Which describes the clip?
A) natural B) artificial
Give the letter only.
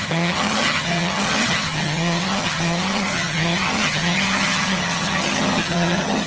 B